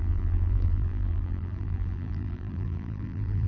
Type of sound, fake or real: fake